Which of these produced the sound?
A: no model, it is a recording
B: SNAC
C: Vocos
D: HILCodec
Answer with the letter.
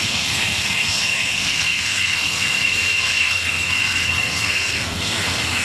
B